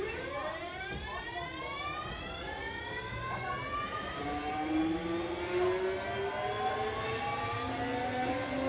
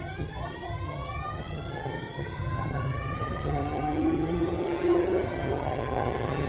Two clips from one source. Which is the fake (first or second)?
second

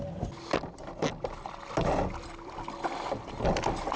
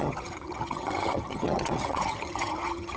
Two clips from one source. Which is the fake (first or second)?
second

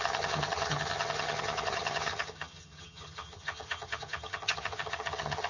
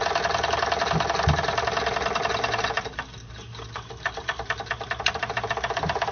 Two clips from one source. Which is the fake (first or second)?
first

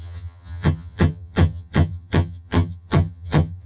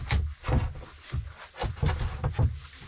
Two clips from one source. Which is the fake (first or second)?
first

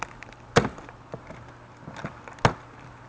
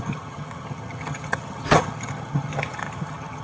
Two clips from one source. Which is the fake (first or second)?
second